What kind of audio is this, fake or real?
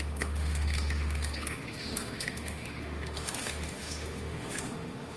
fake